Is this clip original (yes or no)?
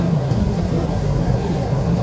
no